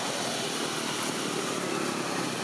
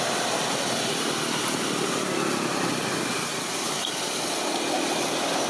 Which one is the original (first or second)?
first